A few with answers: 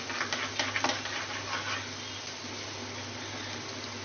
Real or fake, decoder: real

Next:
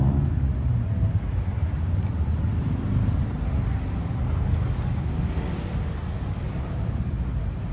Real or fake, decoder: real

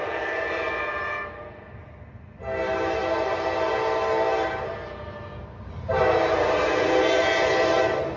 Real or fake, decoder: real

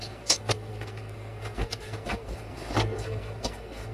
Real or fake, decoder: fake, codec, SNAC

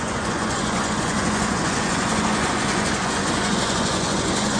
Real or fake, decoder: fake, vocoder, Vocos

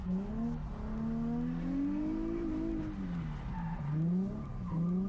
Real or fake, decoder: real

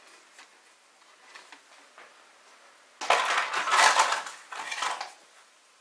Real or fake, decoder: real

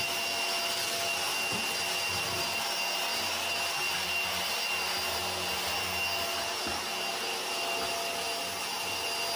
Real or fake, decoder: real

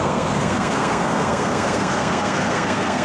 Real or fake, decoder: fake, codec, SNAC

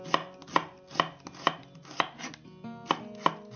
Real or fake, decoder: real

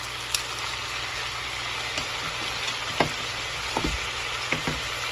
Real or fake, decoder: real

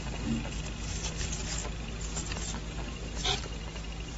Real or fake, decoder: real